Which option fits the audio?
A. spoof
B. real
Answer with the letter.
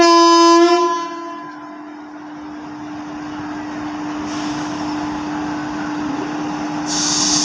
B